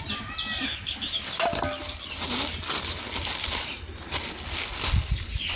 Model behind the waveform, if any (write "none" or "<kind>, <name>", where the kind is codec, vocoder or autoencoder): none